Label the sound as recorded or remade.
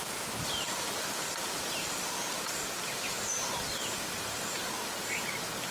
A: recorded